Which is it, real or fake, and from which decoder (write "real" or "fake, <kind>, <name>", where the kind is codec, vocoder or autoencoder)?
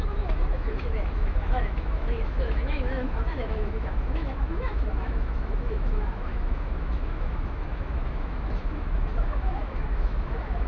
fake, autoencoder, DAC-VAE